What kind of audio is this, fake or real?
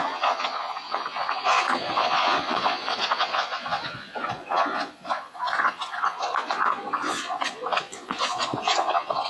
fake